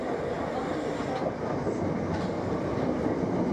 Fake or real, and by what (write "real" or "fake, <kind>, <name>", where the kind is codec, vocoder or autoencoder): real